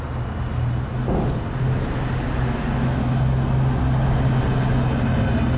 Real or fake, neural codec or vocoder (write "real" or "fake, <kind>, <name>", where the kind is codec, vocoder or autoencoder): real